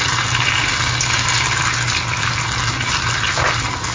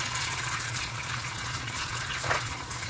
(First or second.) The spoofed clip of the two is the second